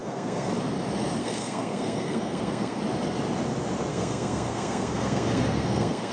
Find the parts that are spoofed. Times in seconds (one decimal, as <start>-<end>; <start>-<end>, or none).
0.0-0.5; 1.2-2.8; 3.9-6.1